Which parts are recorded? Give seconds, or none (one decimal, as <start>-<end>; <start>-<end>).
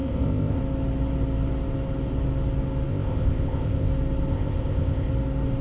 0.6-2.9; 3.9-4.3; 5.1-5.6